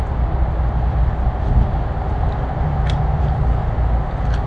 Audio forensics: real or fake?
real